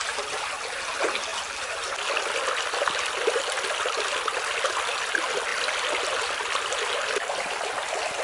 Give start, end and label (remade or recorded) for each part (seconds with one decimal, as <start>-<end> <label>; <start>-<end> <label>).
0.0-8.2 recorded